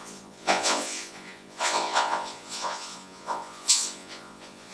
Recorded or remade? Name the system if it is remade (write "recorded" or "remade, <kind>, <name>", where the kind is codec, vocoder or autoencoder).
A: remade, vocoder, Vocos